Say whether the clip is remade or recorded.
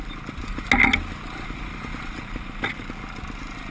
recorded